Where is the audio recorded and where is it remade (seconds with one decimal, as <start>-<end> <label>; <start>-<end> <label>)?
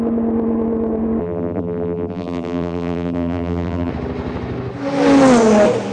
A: 0.0-1.2 recorded; 1.2-3.9 remade; 3.9-5.9 recorded